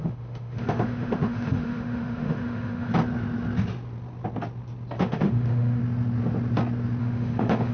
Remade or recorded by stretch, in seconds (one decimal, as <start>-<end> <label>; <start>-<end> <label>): 0.0-2.9 remade; 2.9-5.0 recorded; 5.0-5.8 remade; 5.8-7.0 recorded; 7.0-7.7 remade